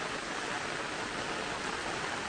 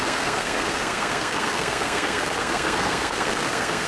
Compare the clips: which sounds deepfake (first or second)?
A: second